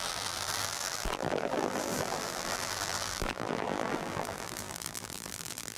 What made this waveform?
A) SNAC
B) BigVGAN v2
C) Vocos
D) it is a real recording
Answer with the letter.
B